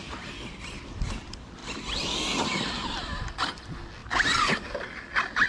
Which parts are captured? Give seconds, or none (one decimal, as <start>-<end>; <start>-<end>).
0.0-5.5

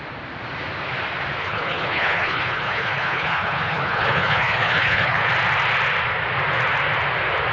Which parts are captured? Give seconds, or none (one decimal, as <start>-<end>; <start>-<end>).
0.0-1.4; 5.3-7.5

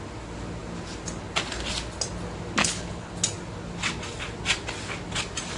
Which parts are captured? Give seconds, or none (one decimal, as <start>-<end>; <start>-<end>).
0.0-2.6; 3.1-5.6

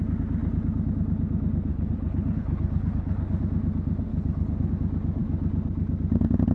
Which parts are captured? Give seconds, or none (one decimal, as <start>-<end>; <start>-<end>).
0.0-1.7; 3.4-4.1; 4.7-6.5

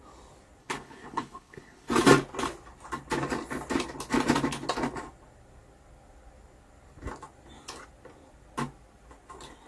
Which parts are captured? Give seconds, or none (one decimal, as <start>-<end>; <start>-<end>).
0.0-0.6; 1.9-9.7